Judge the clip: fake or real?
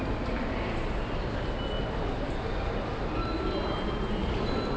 real